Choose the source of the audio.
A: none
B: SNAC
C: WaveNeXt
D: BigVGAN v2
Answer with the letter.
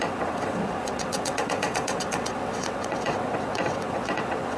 C